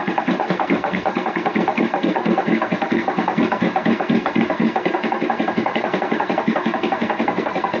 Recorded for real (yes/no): no